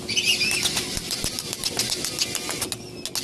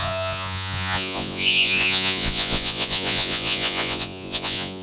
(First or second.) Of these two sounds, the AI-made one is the second